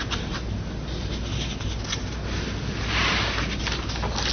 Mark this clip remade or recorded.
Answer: recorded